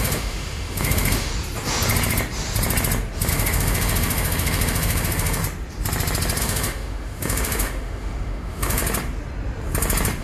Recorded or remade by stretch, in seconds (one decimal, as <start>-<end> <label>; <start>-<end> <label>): 0.0-1.3 remade; 1.3-3.3 recorded; 3.3-5.4 remade; 5.4-6.4 recorded; 6.4-8.8 remade; 8.8-10.2 recorded